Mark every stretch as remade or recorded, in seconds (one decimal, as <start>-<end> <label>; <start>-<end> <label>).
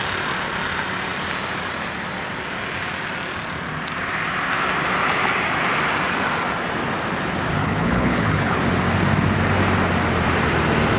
0.0-7.6 recorded; 7.6-8.6 remade; 8.6-11.0 recorded